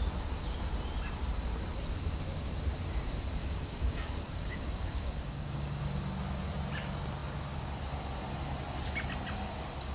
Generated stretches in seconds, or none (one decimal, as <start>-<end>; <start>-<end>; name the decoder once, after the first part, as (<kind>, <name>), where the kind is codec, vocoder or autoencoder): 3.4-5.8 (codec, DAC)